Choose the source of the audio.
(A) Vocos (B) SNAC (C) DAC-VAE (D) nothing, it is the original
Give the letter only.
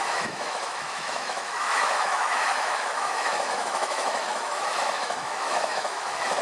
C